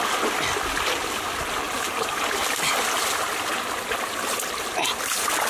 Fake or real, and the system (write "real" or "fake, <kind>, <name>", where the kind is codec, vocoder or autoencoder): real